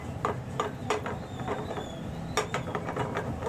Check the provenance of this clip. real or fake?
real